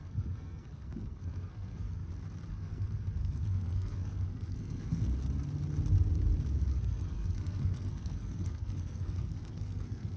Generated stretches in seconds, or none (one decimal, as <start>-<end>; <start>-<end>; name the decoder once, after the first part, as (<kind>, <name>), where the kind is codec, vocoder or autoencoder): 0.0-2.0 (codec, SNAC); 2.5-5.1; 6.7-10.2